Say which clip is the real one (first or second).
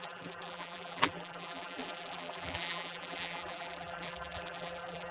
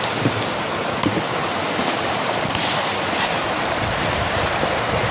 second